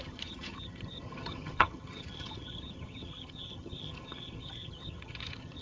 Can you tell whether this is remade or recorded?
remade